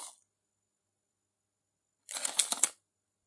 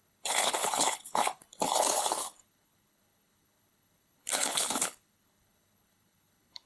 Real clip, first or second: first